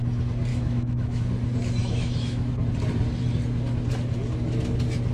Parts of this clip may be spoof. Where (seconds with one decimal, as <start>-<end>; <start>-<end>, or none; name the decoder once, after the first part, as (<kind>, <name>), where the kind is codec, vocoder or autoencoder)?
0.5-1.2 (autoencoder, DAC-VAE); 1.8-2.5